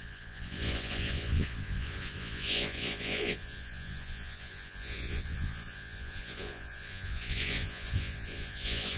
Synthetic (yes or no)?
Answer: yes